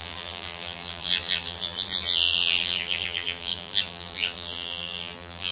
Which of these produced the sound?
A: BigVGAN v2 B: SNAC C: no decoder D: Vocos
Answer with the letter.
A